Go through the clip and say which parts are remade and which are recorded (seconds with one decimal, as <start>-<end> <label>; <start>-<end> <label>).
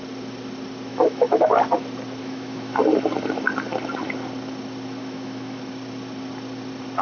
0.0-0.9 recorded; 0.9-1.5 remade; 1.5-2.2 recorded; 2.2-2.8 remade; 2.8-5.0 recorded; 5.0-5.6 remade; 5.6-7.0 recorded